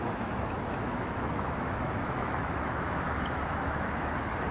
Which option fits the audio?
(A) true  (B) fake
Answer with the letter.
B